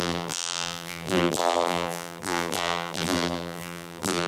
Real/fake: fake